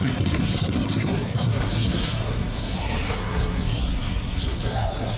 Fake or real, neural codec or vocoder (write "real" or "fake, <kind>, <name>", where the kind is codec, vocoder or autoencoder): fake, codec, SNAC